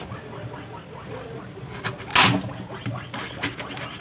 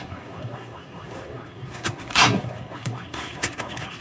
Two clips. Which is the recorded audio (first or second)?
first